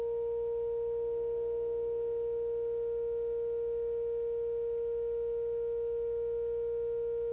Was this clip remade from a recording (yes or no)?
no